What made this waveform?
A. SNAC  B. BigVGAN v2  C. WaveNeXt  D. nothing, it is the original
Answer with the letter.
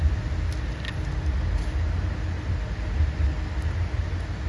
D